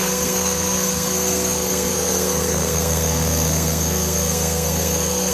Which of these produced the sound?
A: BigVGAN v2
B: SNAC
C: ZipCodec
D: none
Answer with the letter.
B